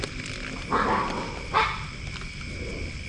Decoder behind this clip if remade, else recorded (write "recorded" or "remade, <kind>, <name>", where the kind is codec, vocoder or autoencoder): recorded